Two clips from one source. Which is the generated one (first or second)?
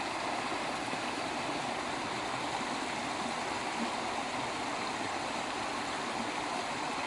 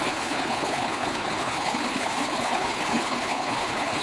second